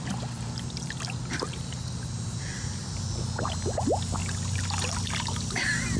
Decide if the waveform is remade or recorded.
recorded